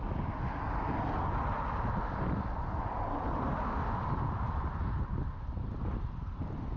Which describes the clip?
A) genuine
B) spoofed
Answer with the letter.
A